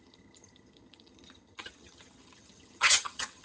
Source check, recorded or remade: remade